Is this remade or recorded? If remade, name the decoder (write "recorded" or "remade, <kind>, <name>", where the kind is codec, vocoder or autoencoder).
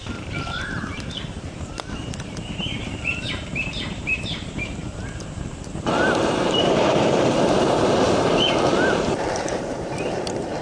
remade, vocoder, BigVGAN v2